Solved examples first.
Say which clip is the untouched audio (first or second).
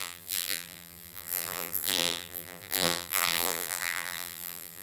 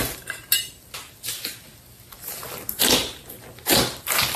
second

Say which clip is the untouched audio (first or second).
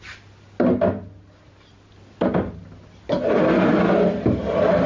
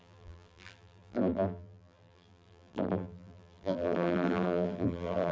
first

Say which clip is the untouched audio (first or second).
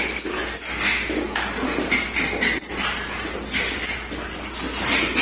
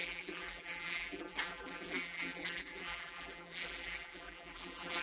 first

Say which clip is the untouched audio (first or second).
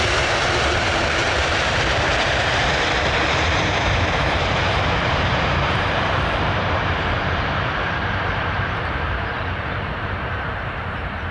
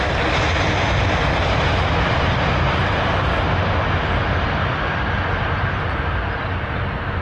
second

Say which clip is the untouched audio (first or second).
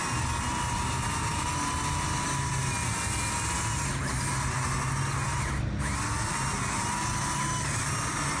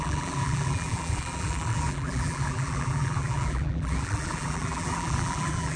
first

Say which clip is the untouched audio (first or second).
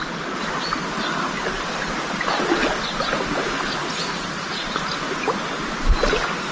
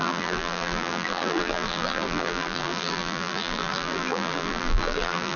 first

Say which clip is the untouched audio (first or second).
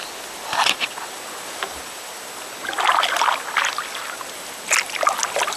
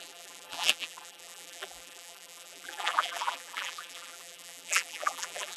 first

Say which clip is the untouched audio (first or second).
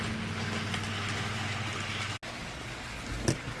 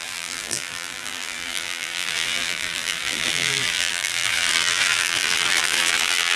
first